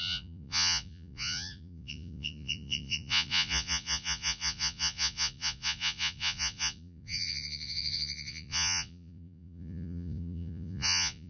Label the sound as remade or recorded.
remade